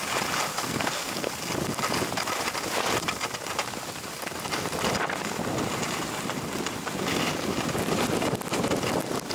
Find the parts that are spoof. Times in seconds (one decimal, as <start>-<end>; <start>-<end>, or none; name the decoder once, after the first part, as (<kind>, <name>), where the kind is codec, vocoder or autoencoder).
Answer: 0.5-1.3 (codec, SNAC)